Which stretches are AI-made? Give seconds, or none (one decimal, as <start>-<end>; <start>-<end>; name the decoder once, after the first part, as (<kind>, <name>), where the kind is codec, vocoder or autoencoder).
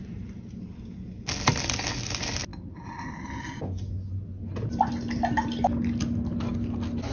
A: none